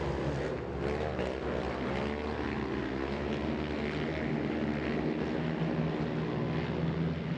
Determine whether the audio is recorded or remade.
recorded